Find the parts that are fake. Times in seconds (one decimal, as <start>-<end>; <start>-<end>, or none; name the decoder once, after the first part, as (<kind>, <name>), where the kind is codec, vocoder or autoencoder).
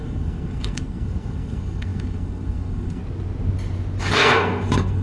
0.0-3.0 (codec, SNAC); 4.0-5.0